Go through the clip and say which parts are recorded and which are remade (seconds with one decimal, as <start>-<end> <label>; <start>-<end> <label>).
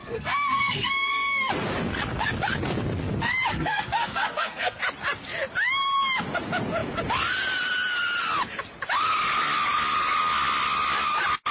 0.0-1.5 remade; 1.5-3.5 recorded; 3.5-4.8 remade; 4.8-11.5 recorded